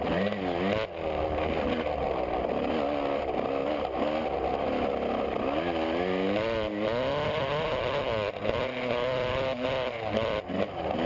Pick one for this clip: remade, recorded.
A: recorded